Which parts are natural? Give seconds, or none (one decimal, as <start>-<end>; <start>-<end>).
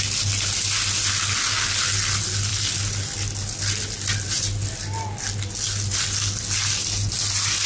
0.0-7.7